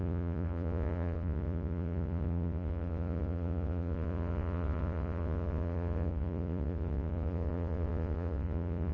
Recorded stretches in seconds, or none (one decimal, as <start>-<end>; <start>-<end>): none